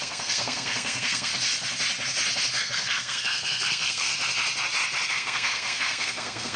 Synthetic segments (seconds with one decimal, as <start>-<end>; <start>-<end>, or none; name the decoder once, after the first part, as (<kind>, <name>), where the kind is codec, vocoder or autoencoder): 0.0-1.3 (codec, SNAC); 2.6-4.1; 5.1-6.6